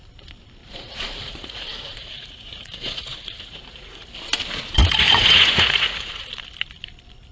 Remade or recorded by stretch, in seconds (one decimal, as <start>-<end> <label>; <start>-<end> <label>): 0.0-0.6 recorded; 0.6-4.1 remade; 4.1-4.8 recorded; 4.8-6.3 remade; 6.3-7.3 recorded